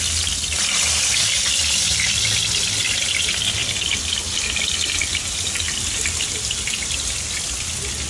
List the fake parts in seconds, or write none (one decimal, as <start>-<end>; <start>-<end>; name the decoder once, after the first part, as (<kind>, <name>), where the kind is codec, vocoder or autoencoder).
none